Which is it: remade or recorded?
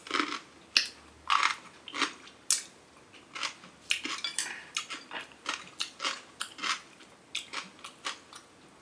recorded